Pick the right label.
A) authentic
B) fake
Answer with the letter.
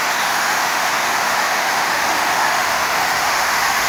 B